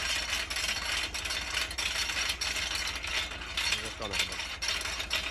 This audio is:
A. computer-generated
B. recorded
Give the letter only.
B